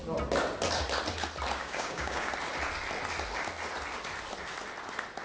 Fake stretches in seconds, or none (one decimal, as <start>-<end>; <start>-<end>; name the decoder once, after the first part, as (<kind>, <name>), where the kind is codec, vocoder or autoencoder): 1.6-2.3 (codec, DAC)